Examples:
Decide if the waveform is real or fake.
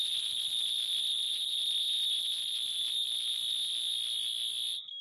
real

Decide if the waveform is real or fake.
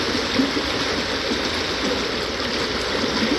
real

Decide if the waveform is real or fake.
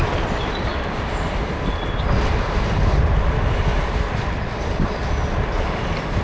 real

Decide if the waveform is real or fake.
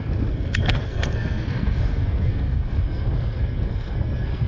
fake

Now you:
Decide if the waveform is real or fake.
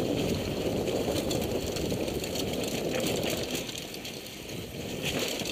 real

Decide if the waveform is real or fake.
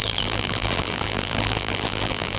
fake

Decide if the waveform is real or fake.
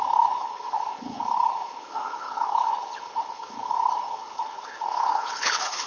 fake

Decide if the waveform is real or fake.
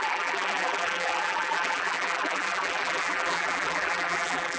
fake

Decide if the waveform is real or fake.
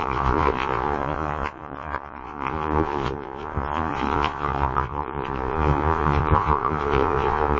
fake